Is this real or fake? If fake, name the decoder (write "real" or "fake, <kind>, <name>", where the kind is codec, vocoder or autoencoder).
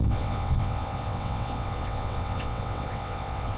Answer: fake, vocoder, WaveNeXt